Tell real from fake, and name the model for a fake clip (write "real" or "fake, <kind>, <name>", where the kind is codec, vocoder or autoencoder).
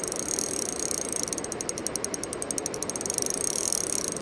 real